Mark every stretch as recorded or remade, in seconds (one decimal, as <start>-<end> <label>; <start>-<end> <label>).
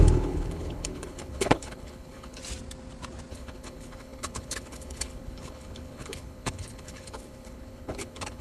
0.0-2.4 remade; 2.4-3.3 recorded; 3.3-8.4 remade